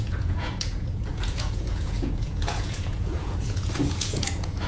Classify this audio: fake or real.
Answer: fake